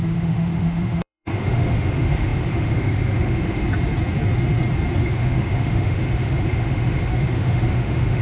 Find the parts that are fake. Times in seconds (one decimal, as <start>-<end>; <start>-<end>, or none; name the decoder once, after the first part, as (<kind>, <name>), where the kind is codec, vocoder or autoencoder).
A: 0.0-3.6 (autoencoder, DAC-VAE); 5.0-8.2